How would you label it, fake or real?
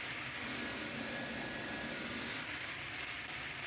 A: real